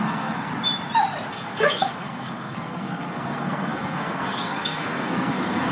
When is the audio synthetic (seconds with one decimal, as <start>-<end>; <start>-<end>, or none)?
0.0-0.5; 1.3-5.7